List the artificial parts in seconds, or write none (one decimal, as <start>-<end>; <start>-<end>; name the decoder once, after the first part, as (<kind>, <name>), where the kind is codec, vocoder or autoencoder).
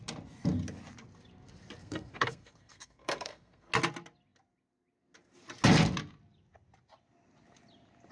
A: 1.8-3.7 (codec, SNAC)